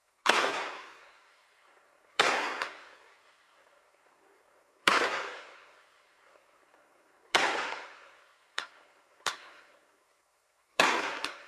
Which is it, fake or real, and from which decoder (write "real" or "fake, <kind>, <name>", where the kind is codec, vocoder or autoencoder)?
fake, codec, SNAC